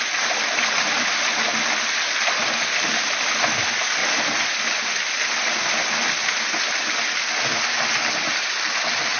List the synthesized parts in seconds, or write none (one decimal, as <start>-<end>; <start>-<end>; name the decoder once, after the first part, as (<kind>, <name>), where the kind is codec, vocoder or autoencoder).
none